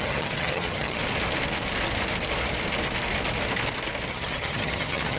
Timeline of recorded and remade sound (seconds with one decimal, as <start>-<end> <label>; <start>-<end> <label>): 0.0-1.0 remade; 1.0-4.1 recorded; 4.1-5.2 remade